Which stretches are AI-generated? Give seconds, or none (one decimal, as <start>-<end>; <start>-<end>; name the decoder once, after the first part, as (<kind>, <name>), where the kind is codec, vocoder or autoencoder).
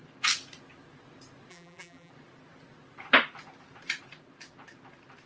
1.5-2.1 (vocoder, BigVGAN v2)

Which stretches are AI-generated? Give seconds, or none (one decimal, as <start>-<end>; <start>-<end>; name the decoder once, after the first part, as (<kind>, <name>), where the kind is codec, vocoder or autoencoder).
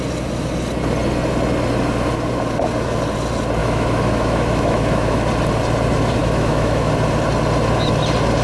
3.6-5.2 (autoencoder, DAC-VAE); 6.2-6.9